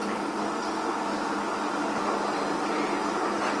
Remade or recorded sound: recorded